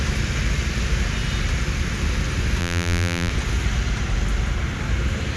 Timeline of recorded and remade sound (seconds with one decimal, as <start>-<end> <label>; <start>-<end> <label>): 0.0-2.6 recorded; 2.6-3.3 remade; 3.3-5.4 recorded